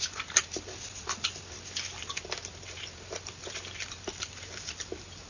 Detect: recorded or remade recorded